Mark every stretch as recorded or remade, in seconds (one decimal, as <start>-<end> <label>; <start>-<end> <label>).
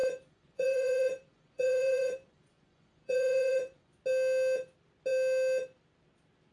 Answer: 0.0-3.9 remade; 3.9-6.5 recorded